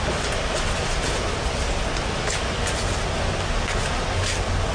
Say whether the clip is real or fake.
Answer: real